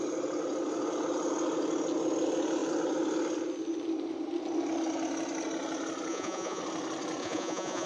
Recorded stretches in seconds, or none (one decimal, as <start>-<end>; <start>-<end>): 0.0-6.1; 6.6-7.2